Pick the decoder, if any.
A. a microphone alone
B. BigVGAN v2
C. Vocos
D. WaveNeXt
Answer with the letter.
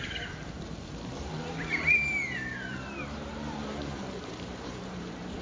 B